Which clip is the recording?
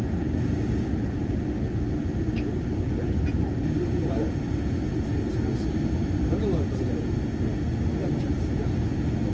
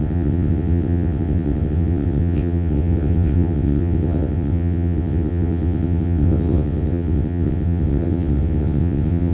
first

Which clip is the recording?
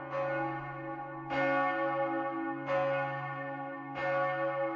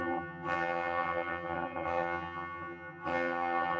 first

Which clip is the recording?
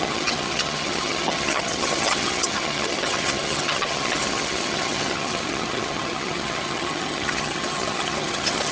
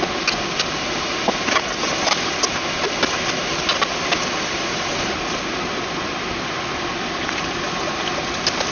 second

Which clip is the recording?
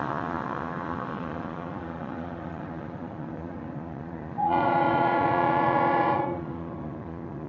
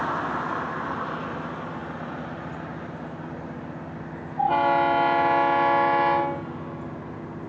second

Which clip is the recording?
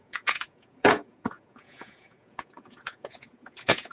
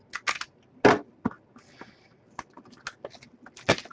second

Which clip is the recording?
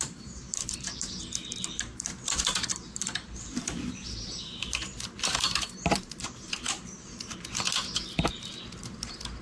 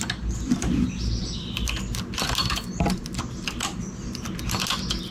second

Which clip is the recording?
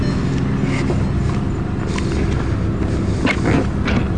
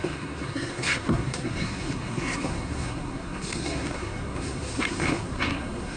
first